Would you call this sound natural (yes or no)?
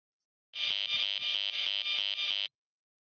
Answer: yes